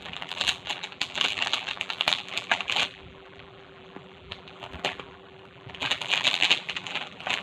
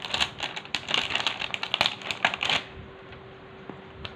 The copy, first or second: first